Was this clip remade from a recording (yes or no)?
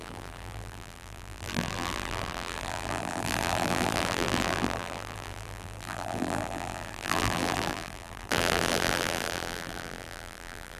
yes